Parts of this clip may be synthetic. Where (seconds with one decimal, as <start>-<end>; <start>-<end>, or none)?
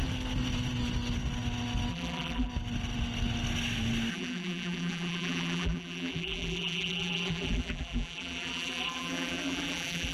1.9-2.5; 4.1-10.1